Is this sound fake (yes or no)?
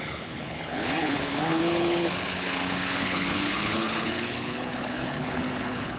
yes